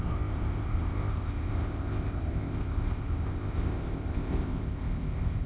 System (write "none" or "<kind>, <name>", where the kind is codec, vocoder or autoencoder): codec, ZipCodec